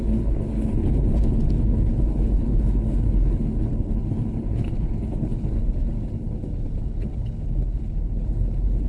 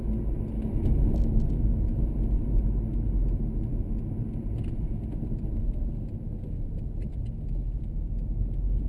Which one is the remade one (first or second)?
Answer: first